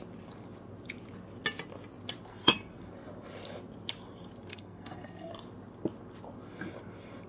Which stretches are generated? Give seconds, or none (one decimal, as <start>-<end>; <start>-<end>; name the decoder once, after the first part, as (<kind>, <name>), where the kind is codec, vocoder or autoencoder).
2.3-2.9 (codec, SNAC); 4.5-5.3